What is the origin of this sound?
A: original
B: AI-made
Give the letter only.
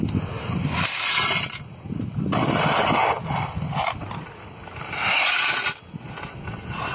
A